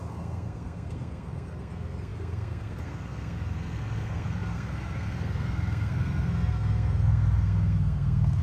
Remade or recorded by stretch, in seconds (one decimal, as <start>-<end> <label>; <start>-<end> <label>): 0.0-8.4 remade